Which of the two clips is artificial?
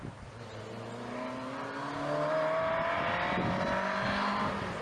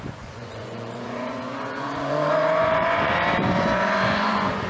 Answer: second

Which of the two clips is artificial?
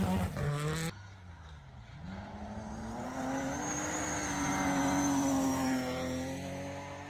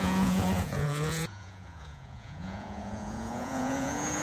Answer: second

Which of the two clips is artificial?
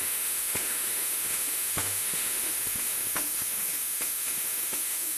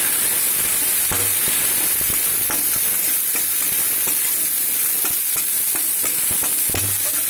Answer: first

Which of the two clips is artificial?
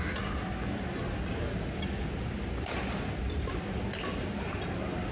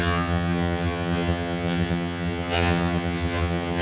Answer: second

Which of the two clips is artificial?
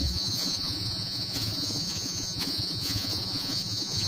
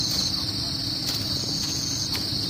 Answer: first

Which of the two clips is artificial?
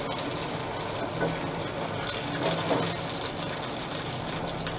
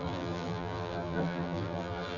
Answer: second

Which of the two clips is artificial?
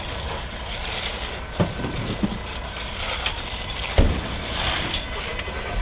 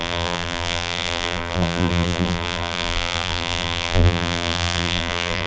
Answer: second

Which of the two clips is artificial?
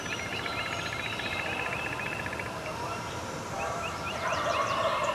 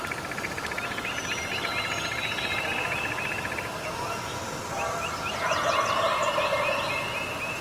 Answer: first